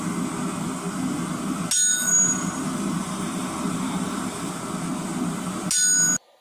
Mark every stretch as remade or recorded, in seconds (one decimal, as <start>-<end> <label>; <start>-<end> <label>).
0.0-1.9 recorded; 1.9-4.5 remade; 4.5-6.4 recorded